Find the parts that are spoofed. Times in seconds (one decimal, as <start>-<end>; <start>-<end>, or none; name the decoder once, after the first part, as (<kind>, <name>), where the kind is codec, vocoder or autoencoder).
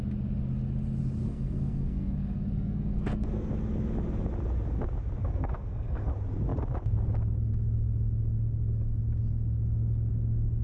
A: 1.2-3.5 (codec, SNAC); 5.2-6.1